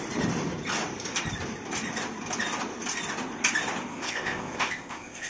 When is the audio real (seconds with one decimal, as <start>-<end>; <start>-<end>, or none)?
0.0-3.9